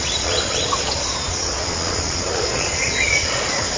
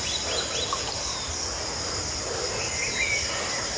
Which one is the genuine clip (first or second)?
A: second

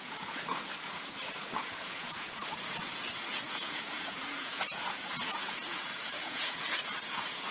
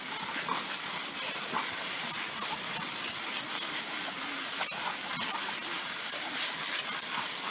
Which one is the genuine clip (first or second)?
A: second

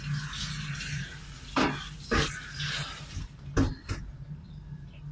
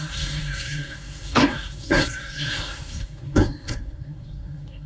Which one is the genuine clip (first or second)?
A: first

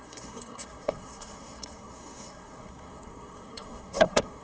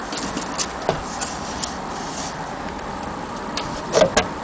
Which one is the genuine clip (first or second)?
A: second